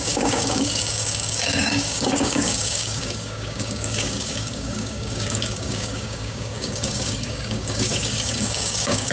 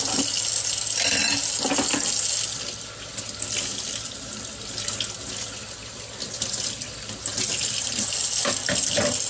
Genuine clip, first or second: second